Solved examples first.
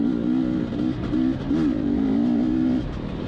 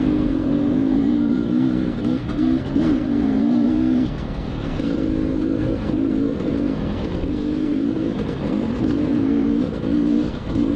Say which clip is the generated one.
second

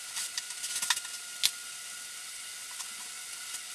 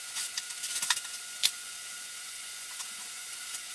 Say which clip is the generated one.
second